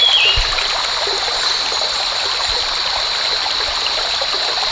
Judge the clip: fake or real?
fake